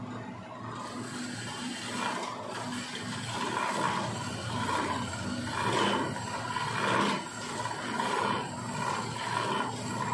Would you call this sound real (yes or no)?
yes